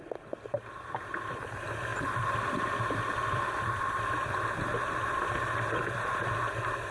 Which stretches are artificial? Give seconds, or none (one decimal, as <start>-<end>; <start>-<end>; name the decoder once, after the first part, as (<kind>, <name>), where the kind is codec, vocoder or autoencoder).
none